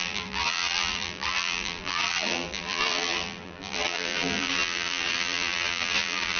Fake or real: fake